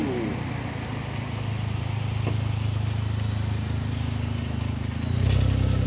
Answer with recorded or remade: recorded